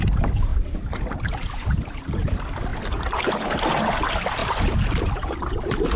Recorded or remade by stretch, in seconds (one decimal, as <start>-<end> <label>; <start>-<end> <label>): 0.0-0.5 recorded; 0.5-1.8 remade; 1.8-2.7 recorded; 2.7-3.3 remade; 3.3-4.4 recorded; 4.4-5.0 remade; 5.0-6.0 recorded